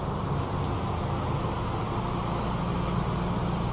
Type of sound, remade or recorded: recorded